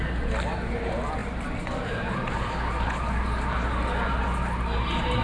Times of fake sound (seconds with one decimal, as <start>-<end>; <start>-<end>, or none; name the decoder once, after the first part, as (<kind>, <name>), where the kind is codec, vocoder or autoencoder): none